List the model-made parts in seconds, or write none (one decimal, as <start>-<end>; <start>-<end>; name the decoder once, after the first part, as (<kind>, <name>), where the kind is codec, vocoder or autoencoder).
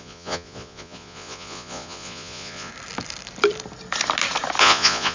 0.0-2.7 (vocoder, Vocos); 4.6-5.1